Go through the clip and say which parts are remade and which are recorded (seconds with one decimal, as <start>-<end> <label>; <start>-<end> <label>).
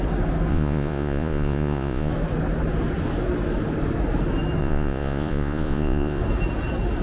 0.0-0.5 recorded; 0.5-2.1 remade; 2.1-4.6 recorded; 4.6-6.2 remade; 6.2-7.0 recorded